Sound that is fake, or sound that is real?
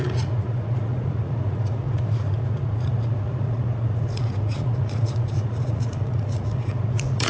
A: fake